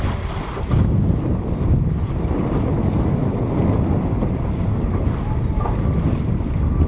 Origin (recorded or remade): recorded